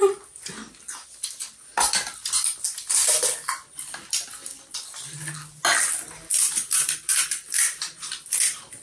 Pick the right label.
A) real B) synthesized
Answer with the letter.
A